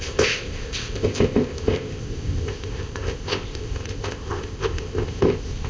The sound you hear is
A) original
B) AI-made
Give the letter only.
B